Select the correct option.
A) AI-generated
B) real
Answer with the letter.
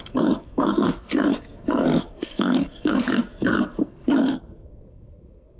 A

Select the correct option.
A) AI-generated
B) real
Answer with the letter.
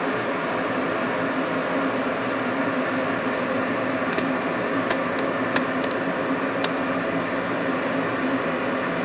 B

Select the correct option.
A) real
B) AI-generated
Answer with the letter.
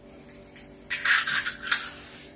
A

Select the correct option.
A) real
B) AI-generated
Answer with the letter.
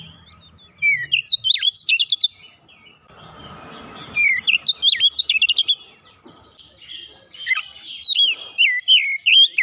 A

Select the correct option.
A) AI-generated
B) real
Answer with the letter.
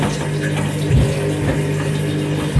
B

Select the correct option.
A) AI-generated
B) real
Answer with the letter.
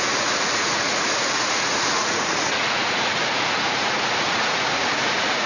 A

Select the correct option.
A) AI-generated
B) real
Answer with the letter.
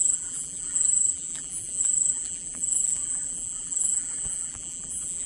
A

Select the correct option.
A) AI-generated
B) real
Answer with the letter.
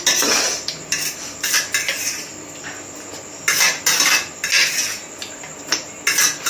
B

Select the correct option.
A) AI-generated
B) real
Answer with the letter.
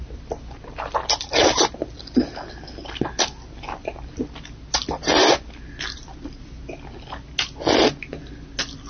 B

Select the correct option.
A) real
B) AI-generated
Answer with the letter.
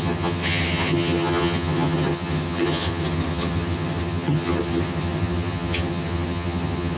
B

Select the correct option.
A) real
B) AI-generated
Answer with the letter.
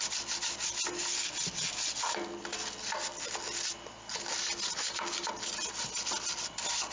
A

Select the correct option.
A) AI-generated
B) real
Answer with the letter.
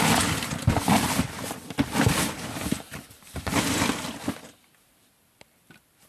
B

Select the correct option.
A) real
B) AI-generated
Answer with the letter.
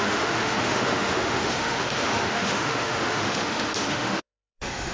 B